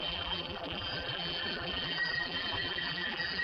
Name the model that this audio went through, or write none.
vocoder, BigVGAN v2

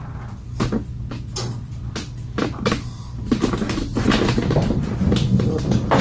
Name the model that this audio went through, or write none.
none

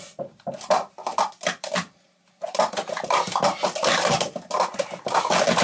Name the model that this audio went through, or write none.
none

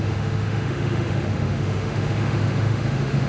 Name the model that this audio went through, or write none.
autoencoder, DAC-VAE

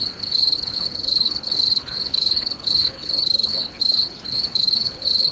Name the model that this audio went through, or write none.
codec, HILCodec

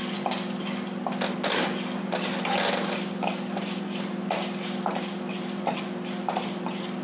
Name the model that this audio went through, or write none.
none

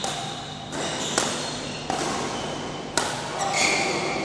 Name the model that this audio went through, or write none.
none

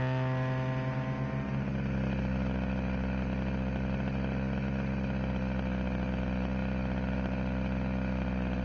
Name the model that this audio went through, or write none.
none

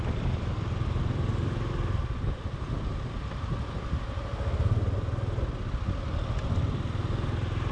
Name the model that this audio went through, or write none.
none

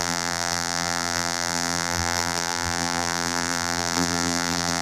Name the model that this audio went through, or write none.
vocoder, BigVGAN v2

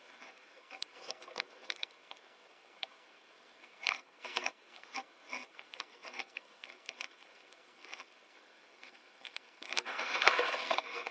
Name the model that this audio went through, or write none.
codec, SNAC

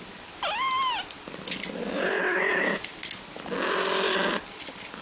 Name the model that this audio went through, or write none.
none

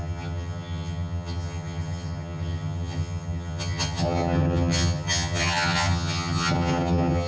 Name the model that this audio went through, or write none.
vocoder, HiFi-GAN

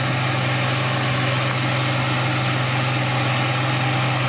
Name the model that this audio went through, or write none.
none